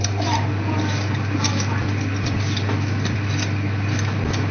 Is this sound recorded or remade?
recorded